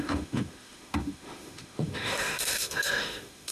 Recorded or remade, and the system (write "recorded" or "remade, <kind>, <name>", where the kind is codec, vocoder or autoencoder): remade, autoencoder, DAC-VAE